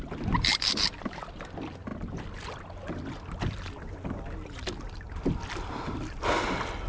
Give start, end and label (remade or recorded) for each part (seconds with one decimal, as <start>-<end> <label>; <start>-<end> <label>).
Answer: 0.0-6.9 recorded